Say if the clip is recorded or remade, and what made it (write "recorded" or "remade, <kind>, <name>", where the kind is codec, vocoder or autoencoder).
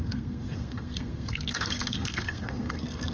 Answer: remade, codec, SNAC